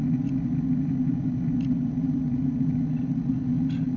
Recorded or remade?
recorded